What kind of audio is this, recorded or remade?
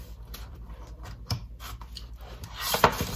remade